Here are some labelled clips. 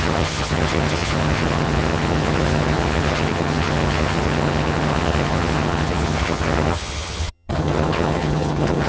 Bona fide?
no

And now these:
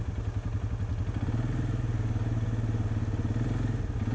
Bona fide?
yes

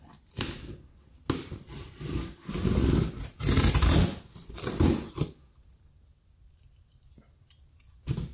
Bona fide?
yes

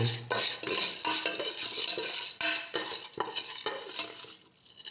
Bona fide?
yes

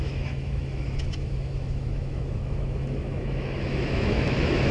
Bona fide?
no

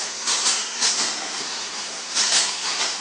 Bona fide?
no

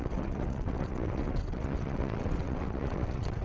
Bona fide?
no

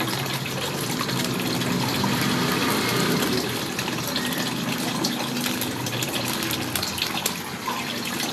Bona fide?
yes